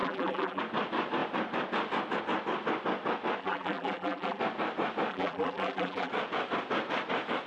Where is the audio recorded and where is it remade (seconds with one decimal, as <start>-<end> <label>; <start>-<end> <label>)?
0.0-0.6 remade; 0.6-3.4 recorded; 3.4-4.4 remade; 4.4-5.1 recorded; 5.1-6.1 remade; 6.1-7.5 recorded